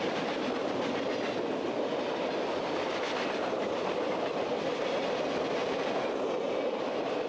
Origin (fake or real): real